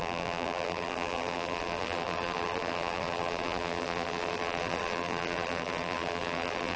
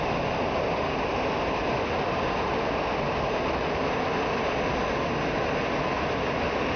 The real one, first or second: second